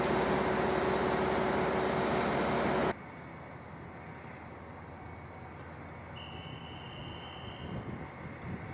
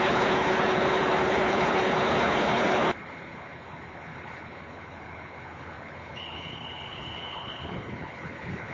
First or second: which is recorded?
first